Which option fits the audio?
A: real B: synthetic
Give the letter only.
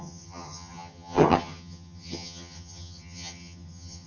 B